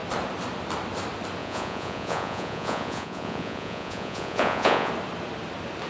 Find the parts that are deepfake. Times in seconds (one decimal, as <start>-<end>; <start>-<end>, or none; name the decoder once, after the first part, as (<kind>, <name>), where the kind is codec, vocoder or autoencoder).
1.4-4.9 (vocoder, Vocos)